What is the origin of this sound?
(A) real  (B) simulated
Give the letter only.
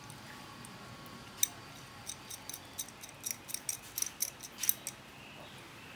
A